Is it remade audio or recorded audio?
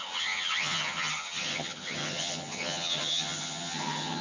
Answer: remade